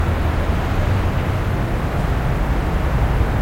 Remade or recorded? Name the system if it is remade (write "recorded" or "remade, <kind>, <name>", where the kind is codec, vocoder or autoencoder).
recorded